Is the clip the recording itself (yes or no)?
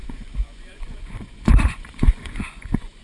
no